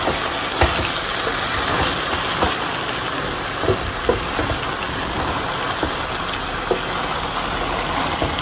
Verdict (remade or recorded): recorded